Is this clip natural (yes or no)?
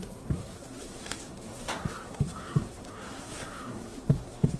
no